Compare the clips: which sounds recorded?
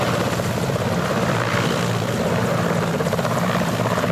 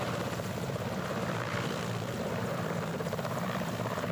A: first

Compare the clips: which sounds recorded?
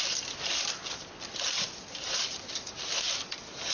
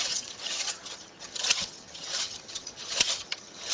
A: first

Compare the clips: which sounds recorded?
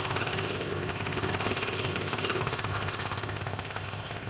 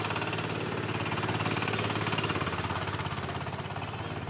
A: second